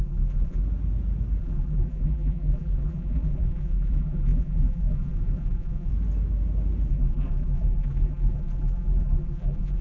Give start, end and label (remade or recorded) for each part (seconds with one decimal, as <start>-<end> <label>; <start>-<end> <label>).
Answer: 0.0-0.6 remade; 0.6-1.4 recorded; 1.4-5.9 remade; 5.9-6.9 recorded; 6.9-9.8 remade